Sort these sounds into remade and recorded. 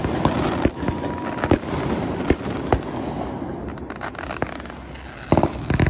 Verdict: recorded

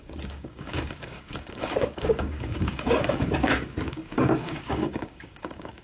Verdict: remade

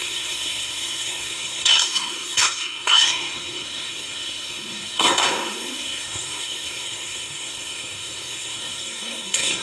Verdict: remade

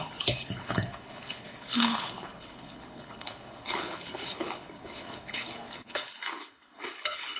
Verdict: remade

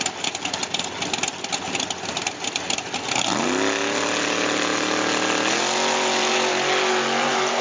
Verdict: recorded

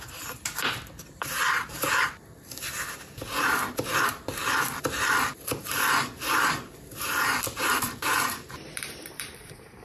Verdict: remade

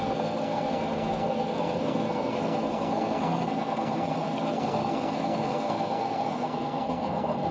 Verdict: remade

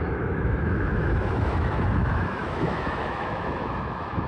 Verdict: remade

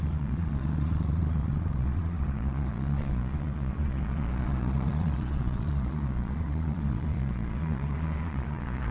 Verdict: remade